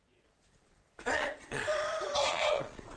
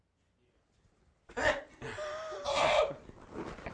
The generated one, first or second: first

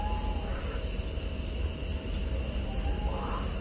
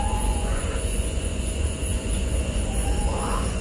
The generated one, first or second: second